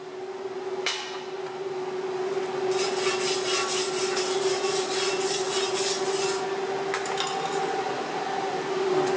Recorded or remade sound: recorded